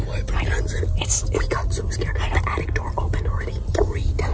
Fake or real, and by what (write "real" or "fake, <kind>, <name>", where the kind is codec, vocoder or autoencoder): real